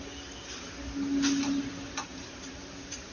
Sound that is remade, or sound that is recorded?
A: recorded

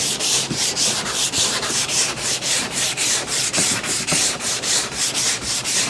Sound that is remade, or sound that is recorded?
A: remade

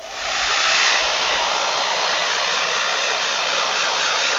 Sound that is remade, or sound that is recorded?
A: recorded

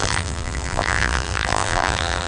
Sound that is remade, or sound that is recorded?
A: remade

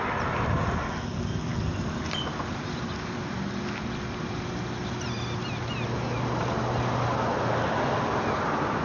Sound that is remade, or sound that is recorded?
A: recorded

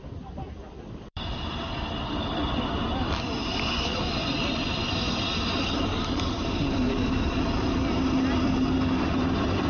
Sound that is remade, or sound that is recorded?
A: remade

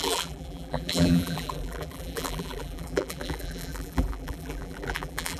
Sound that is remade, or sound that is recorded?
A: remade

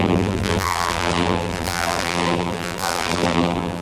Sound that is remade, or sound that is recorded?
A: remade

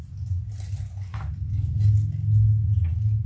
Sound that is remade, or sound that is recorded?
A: recorded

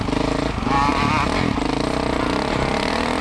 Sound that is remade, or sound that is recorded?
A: recorded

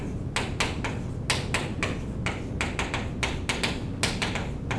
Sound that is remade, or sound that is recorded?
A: recorded